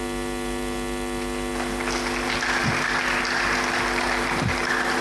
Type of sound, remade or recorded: recorded